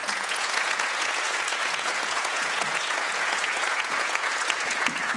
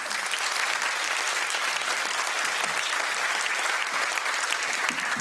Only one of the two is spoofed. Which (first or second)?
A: first